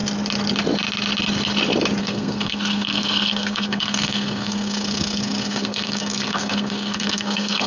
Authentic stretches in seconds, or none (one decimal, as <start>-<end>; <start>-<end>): 0.0-2.0